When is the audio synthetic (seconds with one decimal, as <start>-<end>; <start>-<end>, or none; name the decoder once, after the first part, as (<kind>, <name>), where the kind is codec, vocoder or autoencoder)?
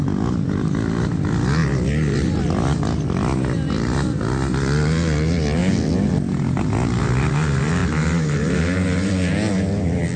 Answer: none